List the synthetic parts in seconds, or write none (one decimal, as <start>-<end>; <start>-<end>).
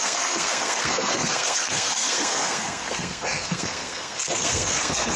0.0-5.2